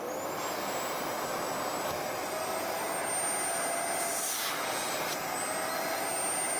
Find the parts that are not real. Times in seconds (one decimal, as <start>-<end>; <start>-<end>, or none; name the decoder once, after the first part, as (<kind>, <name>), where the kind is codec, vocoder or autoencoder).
none